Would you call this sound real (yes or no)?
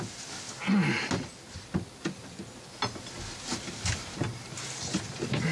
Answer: yes